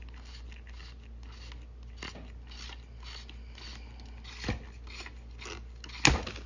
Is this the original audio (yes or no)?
yes